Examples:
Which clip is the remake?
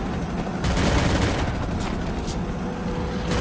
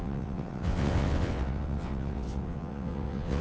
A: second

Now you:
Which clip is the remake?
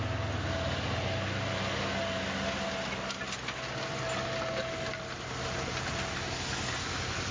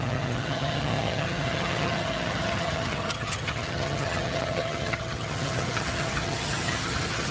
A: second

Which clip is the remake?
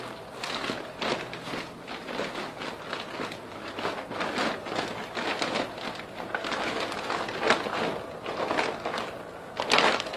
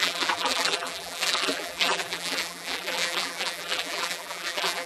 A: second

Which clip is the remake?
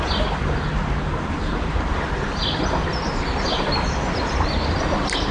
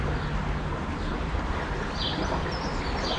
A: first